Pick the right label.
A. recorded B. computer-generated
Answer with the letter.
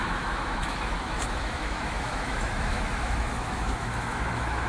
B